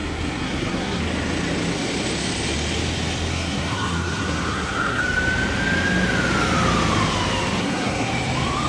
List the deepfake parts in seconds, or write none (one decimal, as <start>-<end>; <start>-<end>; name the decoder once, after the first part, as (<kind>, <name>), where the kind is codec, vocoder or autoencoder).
0.0-1.0 (codec, SNAC); 3.3-5.0; 7.6-8.1